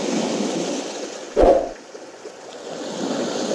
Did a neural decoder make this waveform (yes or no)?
yes